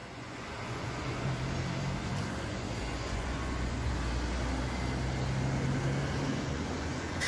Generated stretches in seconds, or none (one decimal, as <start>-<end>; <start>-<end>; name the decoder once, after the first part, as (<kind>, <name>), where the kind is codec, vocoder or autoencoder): 0.0-1.3 (vocoder, Vocos); 2.0-3.9; 6.3-7.3